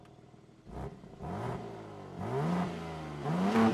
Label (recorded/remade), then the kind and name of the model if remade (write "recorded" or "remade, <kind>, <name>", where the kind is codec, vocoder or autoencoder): recorded